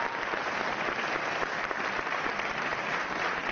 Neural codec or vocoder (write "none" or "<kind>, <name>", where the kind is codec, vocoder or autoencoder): none